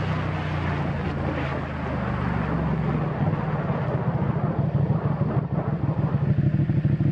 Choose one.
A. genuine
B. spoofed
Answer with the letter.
A